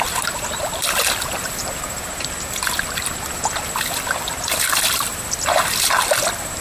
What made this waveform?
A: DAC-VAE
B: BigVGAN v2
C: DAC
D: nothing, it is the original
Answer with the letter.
D